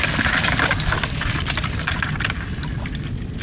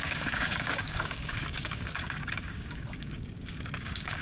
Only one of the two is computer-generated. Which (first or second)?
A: second